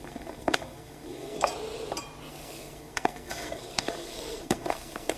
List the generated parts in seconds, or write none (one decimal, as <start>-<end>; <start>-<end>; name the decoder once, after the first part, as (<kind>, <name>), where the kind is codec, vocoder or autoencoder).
0.0-1.5 (codec, SNAC); 2.3-5.2